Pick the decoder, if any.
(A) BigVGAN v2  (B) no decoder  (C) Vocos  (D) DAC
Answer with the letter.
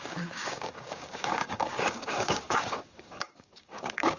D